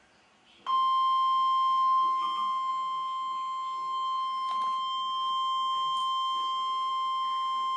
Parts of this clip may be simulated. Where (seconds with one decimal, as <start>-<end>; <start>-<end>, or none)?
none